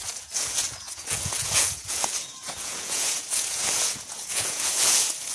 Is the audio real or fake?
fake